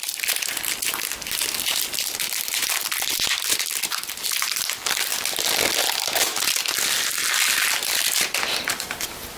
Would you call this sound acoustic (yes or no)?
yes